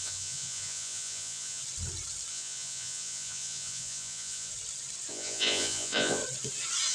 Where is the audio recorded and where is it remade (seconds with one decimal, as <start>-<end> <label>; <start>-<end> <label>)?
0.0-1.6 remade; 1.6-2.3 recorded; 2.3-4.5 remade; 4.5-5.1 recorded; 5.1-6.2 remade; 6.2-6.9 recorded